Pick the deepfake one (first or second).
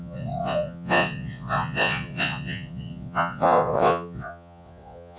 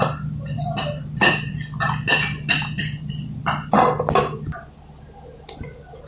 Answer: first